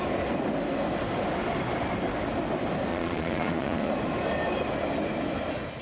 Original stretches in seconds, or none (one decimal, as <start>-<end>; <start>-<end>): 0.0-2.9; 3.9-5.8

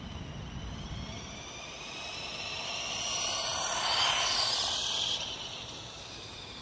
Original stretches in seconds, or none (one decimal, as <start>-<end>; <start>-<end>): 0.0-6.6